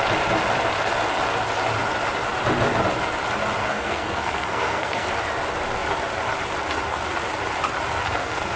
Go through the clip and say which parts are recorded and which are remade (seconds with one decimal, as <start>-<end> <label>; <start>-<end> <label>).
0.0-3.6 recorded; 3.6-5.1 remade; 5.1-8.0 recorded; 8.0-8.6 remade